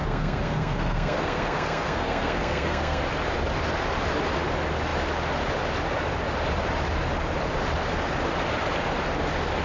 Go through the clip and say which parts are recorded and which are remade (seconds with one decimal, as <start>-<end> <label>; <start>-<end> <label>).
0.0-3.0 remade; 3.0-9.6 recorded